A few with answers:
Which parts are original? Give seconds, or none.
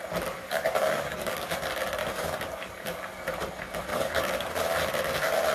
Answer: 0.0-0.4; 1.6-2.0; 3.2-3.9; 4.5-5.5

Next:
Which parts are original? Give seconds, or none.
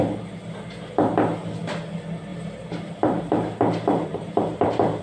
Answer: 0.0-2.3